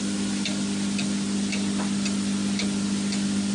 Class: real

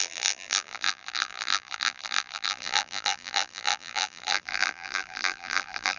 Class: fake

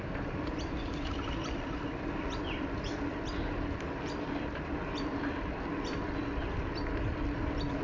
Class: fake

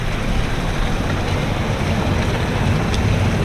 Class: real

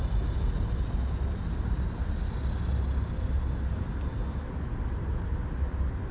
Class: real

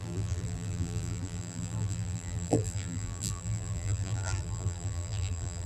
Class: fake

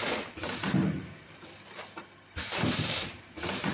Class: fake